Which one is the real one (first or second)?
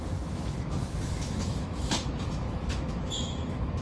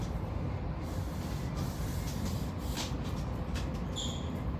second